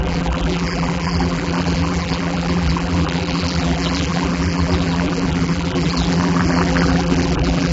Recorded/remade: remade